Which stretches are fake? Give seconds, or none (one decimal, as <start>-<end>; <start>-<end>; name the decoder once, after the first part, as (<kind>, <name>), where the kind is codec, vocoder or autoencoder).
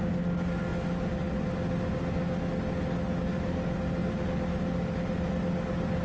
none